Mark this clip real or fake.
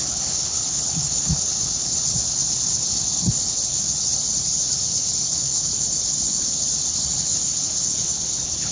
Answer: fake